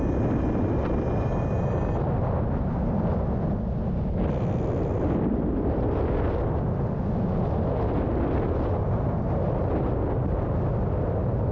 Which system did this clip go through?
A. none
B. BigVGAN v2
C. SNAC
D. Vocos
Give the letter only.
A